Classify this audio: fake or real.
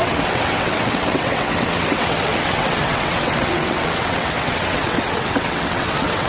fake